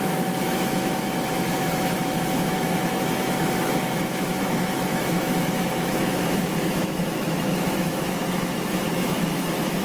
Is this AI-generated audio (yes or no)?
yes